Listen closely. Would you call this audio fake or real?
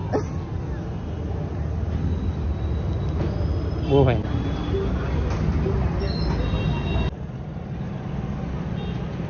real